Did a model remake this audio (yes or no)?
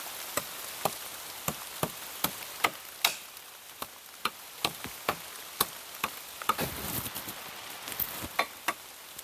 no